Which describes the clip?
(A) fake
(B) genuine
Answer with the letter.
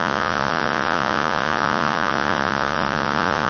A